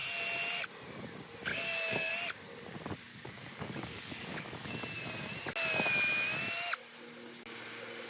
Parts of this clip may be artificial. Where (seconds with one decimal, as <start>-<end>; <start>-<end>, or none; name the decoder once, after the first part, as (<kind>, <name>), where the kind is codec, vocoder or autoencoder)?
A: 1.5-2.1 (codec, DAC); 3.1-4.7

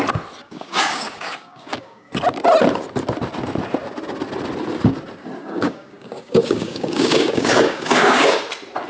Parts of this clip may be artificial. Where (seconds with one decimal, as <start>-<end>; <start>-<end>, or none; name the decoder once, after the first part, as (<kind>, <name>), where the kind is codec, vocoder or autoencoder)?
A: 0.4-2.1 (codec, DAC); 5.4-8.4

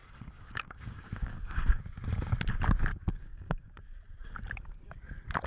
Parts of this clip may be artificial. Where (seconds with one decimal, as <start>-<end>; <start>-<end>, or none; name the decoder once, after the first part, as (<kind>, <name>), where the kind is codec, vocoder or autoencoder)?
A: 0.0-1.8 (codec, DAC); 2.9-3.7

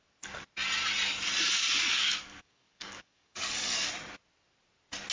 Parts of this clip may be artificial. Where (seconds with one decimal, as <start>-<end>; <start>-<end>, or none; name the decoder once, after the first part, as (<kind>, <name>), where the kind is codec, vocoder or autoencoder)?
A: 1.6-3.9 (codec, DAC)

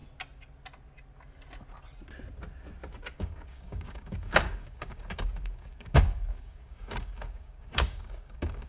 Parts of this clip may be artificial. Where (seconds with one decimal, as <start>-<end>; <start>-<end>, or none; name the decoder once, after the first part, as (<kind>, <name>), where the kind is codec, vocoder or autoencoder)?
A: 3.1-8.7 (codec, DAC)

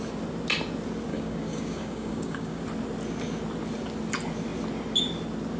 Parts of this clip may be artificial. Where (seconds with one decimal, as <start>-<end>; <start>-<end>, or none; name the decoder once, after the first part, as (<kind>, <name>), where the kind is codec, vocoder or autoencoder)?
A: 1.1-2.6 (codec, DAC)